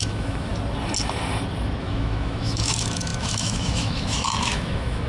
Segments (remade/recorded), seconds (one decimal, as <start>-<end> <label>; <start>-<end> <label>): 0.0-0.5 remade; 0.5-1.8 recorded; 1.8-5.1 remade